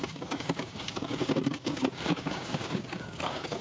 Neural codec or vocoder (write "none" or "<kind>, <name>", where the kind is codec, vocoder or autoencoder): codec, DAC